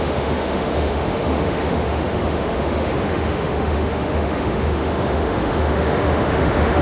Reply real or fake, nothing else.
fake